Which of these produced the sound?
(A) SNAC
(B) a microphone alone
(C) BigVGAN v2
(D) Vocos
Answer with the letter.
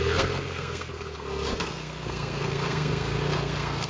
A